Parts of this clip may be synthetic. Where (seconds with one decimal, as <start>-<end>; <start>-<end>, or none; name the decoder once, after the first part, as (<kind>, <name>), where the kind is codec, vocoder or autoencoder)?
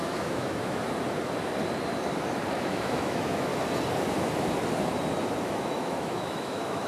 0.0-0.8 (autoencoder, DAC-VAE); 2.5-3.5; 5.4-6.9